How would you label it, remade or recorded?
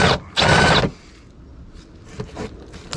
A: recorded